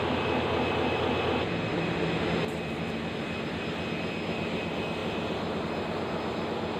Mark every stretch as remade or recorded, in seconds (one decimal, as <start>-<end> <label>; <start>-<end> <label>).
0.0-5.0 recorded; 5.0-5.6 remade; 5.6-6.8 recorded